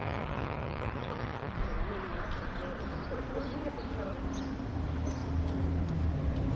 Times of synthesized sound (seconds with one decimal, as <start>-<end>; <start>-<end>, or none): 0.0-1.6